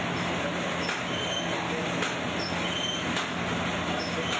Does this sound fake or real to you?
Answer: real